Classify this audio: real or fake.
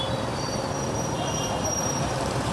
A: fake